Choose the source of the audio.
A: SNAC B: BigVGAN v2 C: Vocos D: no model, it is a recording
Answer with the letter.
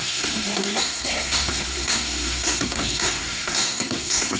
A